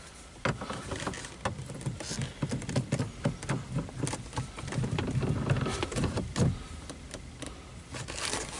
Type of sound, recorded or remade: recorded